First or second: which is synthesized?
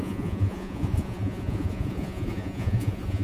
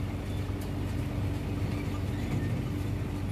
first